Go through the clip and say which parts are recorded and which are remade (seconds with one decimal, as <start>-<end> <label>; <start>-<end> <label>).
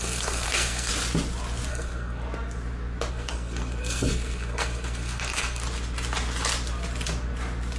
0.0-0.9 remade; 0.9-1.7 recorded; 1.7-2.2 remade; 2.2-3.1 recorded; 3.1-5.6 remade; 5.6-7.8 recorded